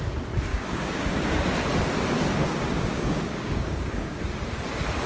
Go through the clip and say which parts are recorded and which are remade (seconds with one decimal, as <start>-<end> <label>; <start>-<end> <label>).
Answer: 0.0-0.5 recorded; 0.5-1.5 remade; 1.5-2.4 recorded; 2.4-4.2 remade; 4.2-5.1 recorded